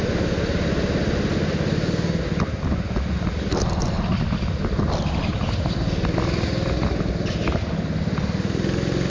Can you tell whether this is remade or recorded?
recorded